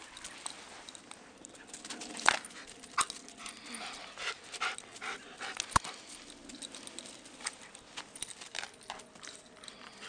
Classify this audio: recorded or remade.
recorded